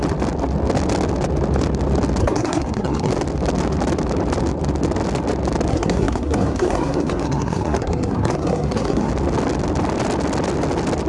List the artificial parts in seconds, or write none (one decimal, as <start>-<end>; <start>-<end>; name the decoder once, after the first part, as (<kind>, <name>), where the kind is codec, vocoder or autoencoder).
2.2-3.1 (codec, SNAC); 5.7-9.1